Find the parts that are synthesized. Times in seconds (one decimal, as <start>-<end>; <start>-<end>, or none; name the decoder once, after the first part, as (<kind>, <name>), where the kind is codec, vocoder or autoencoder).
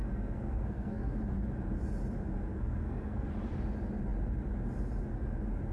0.0-1.1 (codec, SNAC); 2.5-3.3